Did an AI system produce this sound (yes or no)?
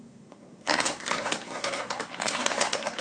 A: yes